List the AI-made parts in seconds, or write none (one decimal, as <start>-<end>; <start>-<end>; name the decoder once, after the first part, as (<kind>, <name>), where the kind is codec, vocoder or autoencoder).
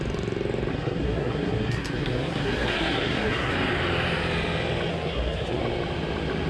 0.7-3.5 (codec, SNAC); 4.9-5.6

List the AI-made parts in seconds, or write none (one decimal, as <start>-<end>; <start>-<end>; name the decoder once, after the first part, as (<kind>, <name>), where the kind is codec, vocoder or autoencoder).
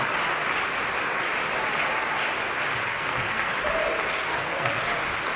2.9-3.5 (codec, SNAC); 4.3-4.8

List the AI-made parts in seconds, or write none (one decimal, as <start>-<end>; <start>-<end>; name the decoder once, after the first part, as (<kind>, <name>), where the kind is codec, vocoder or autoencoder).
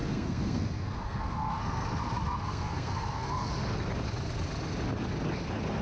0.0-3.5 (codec, SNAC)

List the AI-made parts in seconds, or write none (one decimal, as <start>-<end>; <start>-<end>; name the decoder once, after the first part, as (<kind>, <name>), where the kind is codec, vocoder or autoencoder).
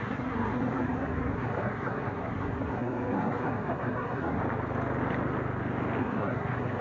0.0-4.4 (codec, SNAC); 6.0-6.8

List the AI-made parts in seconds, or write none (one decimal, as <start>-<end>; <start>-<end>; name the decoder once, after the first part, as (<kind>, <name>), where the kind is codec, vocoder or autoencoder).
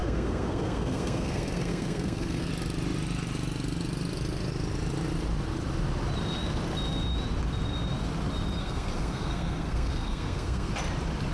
0.0-2.5 (codec, SNAC); 8.6-10.7